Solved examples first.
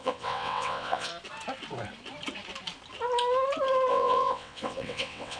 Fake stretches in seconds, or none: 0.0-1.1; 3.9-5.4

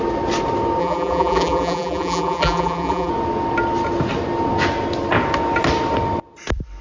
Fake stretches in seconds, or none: 0.8-3.1

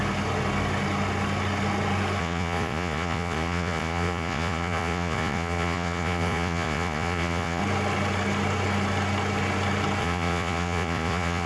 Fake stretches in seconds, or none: 2.2-7.6; 10.0-11.5